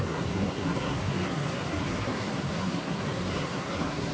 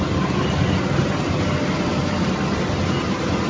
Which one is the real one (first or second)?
second